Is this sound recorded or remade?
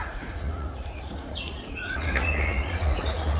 remade